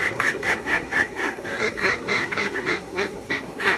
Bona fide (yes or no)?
no